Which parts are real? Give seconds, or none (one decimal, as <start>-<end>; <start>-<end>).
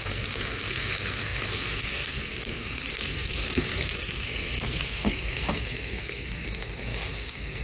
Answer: none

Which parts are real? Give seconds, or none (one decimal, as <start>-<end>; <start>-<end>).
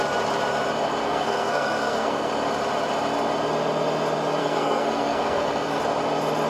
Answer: 0.0-1.0; 2.3-4.4; 5.8-6.5